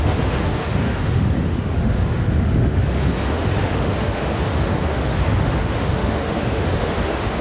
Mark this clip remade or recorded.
remade